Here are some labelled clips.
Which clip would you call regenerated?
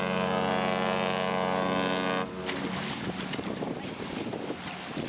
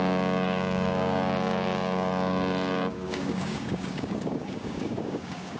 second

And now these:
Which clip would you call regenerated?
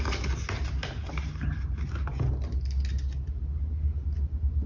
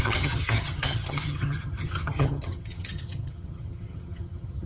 second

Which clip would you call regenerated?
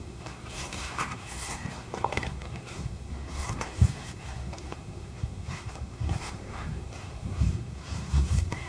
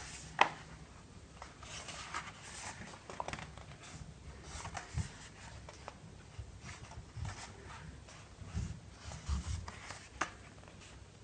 first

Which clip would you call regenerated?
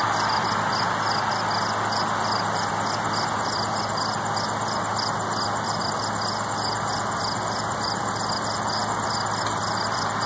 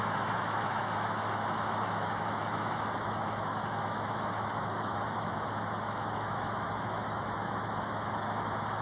second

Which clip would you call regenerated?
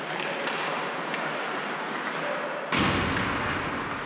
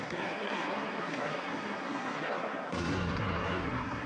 second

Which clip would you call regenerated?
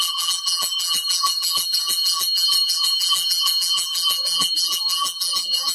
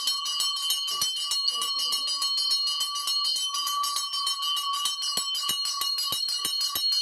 first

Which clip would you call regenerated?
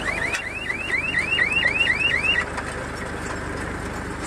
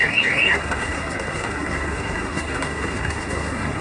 second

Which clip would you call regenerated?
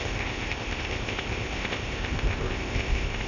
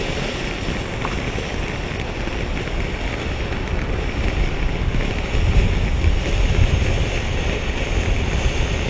first